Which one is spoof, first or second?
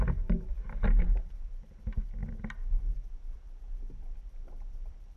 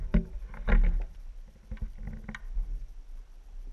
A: first